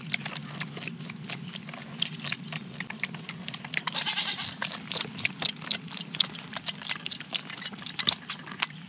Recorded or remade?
recorded